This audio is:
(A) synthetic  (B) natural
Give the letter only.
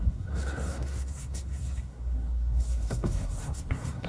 A